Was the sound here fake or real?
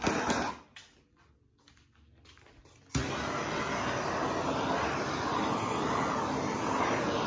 real